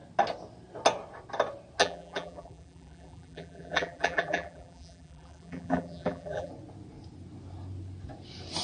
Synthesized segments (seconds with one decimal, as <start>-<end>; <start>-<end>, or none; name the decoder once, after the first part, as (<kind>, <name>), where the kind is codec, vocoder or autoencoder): 1.8-6.5 (vocoder, BigVGAN v2)